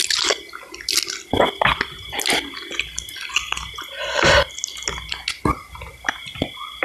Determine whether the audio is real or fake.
real